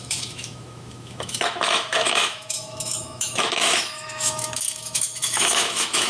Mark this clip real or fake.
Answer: fake